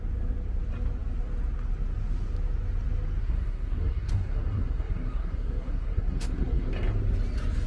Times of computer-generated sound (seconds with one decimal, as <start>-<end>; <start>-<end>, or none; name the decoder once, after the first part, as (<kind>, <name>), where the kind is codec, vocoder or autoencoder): 3.2-6.7 (codec, SNAC)